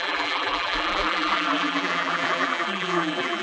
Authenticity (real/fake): fake